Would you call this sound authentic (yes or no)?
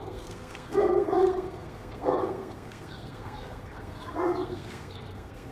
no